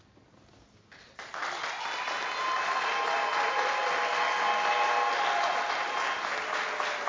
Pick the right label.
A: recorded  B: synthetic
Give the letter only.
A